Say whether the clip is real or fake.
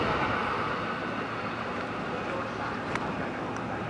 real